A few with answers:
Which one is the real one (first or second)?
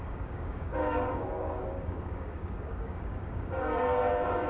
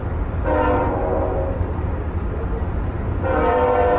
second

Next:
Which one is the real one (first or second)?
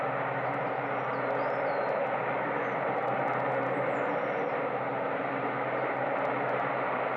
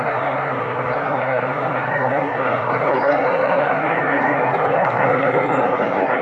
first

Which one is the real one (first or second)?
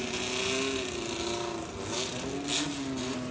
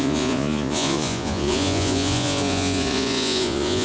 first